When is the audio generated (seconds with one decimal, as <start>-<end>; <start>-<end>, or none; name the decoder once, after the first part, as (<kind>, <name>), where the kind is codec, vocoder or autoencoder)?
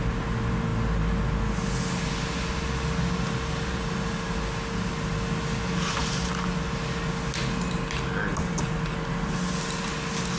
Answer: none